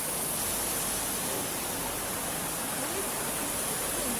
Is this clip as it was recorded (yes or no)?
yes